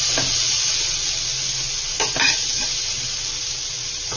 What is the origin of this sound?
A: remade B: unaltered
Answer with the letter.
B